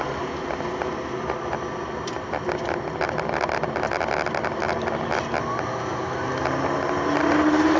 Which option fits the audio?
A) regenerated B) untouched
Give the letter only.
B